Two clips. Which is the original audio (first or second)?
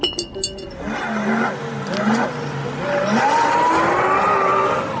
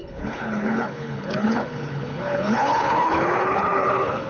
first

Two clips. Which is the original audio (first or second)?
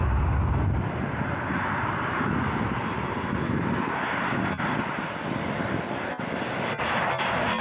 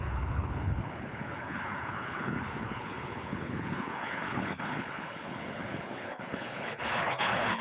first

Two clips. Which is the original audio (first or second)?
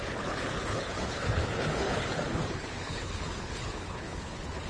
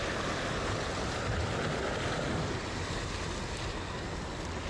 second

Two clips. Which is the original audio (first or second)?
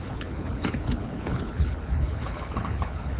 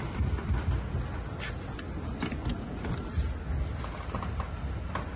second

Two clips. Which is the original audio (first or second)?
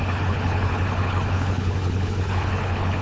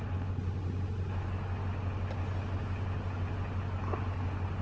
second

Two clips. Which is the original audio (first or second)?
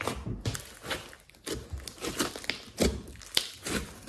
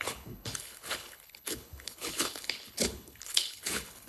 first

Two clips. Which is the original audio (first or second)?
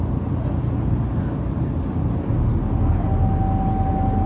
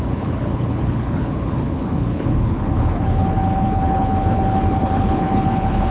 first